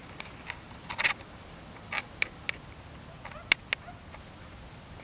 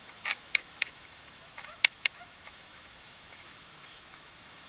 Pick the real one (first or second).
first